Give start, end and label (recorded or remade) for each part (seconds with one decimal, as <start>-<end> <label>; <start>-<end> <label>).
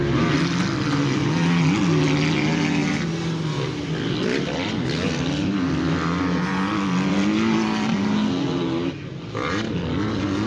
0.0-10.5 recorded